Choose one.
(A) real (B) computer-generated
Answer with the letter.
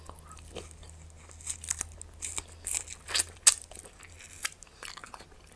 A